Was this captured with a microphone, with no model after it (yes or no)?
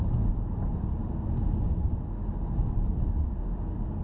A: yes